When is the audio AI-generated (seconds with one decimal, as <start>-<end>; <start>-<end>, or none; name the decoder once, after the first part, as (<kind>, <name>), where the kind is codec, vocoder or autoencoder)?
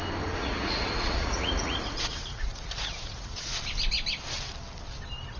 0.4-3.6 (vocoder, Vocos)